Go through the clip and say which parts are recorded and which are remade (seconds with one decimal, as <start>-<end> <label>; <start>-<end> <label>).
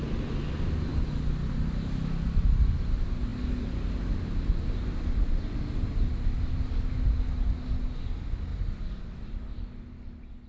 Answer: 0.0-10.5 recorded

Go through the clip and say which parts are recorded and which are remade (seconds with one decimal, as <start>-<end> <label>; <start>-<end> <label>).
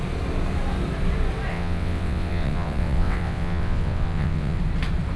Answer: 0.0-1.5 recorded; 1.5-4.6 remade; 4.6-5.2 recorded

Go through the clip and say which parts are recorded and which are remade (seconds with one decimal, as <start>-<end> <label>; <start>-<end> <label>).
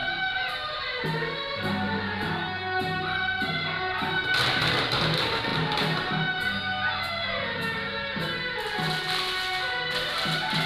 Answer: 0.0-2.3 recorded; 2.3-2.8 remade; 2.8-10.7 recorded